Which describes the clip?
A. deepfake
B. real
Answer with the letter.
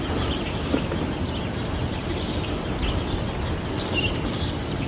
B